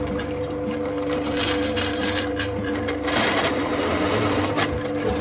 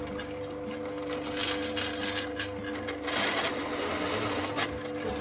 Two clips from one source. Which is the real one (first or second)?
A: second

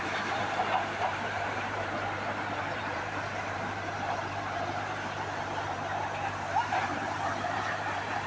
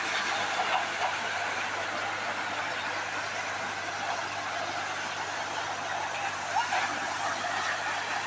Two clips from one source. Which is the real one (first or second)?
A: second